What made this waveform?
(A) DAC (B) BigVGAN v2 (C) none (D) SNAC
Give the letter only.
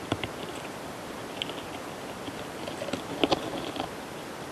C